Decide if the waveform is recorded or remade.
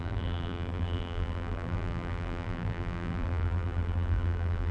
remade